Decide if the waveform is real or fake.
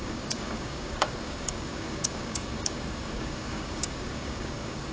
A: fake